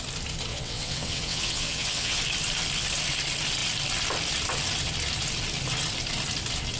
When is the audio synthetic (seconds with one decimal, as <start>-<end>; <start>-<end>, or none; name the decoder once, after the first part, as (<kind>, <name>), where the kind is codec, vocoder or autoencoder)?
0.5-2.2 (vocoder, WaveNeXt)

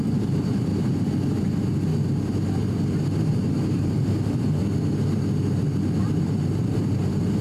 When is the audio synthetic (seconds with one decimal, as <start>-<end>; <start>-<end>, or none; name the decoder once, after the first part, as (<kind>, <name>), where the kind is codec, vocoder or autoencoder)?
0.0-0.7 (vocoder, BigVGAN v2); 1.4-1.9; 3.2-4.6; 6.0-7.4

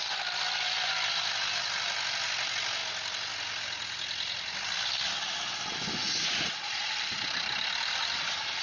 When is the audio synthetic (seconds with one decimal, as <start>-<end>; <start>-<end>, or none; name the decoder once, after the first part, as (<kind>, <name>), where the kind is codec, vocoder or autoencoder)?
6.0-6.9 (vocoder, Vocos)